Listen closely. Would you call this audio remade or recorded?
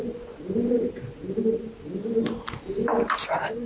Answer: recorded